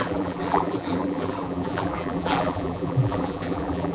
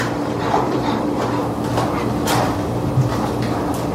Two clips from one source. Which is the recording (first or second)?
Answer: second